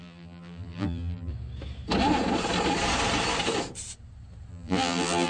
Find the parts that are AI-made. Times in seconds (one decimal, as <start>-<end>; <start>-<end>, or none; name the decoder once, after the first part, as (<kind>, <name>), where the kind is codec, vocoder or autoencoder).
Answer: 0.0-1.3 (vocoder, BigVGAN v2); 4.5-5.3